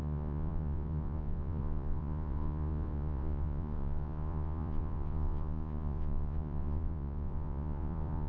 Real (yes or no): no